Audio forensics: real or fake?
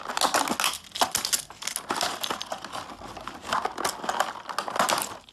real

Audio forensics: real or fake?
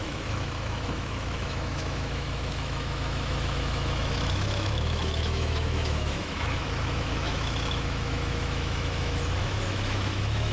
fake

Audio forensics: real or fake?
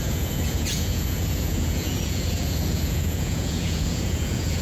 fake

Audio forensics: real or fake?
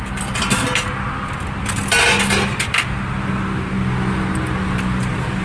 real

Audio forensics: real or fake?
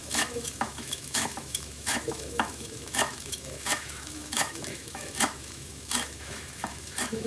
fake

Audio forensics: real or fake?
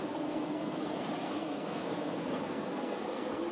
fake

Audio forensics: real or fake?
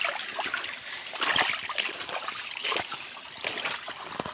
real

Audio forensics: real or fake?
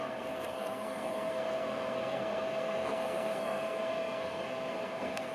fake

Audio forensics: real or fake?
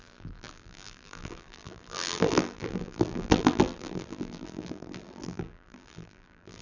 fake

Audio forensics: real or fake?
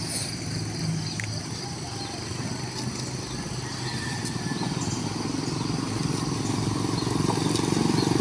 real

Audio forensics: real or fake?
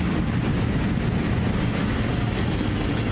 real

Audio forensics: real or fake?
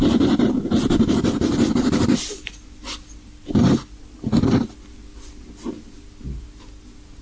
real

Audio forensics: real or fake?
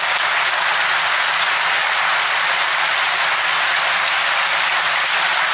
real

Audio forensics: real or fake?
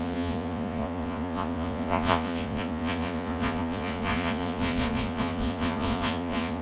fake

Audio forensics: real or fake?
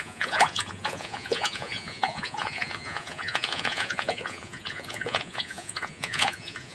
fake